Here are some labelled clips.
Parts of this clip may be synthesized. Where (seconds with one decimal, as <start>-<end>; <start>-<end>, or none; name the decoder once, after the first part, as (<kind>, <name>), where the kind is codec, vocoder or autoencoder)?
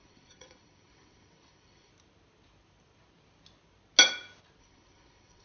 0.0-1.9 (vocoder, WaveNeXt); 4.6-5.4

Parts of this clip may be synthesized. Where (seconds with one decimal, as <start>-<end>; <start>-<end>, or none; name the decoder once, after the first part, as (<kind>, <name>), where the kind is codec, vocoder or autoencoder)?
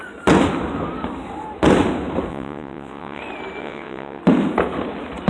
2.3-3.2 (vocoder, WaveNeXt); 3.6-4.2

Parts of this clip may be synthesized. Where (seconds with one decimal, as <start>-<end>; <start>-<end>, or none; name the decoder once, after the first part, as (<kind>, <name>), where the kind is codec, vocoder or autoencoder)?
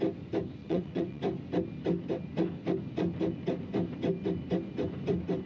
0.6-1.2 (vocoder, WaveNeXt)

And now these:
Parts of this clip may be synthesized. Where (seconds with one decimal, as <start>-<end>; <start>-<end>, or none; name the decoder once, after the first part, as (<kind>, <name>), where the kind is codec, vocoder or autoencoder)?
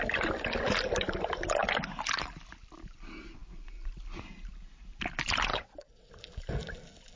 5.5-6.1 (vocoder, WaveNeXt)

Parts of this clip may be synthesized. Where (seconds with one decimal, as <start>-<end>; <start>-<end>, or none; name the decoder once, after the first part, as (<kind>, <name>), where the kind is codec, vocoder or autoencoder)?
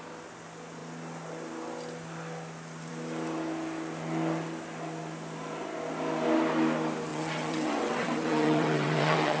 7.1-9.4 (vocoder, WaveNeXt)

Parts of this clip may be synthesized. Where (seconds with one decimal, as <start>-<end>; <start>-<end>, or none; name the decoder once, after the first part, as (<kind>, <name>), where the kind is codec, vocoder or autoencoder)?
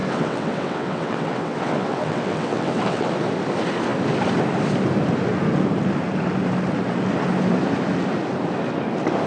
0.0-3.1 (vocoder, WaveNeXt)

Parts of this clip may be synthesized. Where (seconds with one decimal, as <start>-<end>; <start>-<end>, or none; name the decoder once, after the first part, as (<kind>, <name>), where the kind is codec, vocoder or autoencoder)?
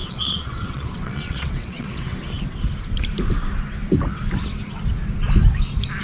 0.0-2.2 (vocoder, WaveNeXt)